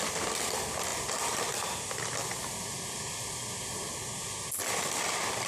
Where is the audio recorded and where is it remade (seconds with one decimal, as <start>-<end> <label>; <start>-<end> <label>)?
0.0-5.5 recorded